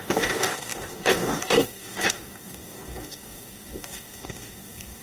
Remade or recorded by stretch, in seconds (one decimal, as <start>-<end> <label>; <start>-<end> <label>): 0.0-5.0 remade